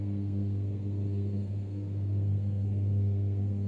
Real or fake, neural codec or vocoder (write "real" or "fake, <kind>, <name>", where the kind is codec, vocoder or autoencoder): fake, codec, SNAC